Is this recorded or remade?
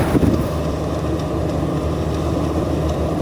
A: remade